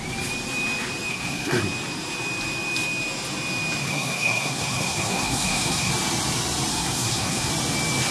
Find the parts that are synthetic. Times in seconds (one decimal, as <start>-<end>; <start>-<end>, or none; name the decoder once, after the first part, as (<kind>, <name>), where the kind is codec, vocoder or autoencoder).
1.1-1.6 (codec, SNAC); 3.8-5.9; 6.7-7.5